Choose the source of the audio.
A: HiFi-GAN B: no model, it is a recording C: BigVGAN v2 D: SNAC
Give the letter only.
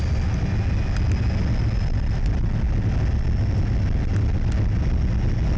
B